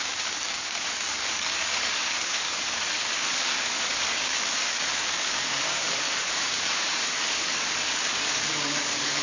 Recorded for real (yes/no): no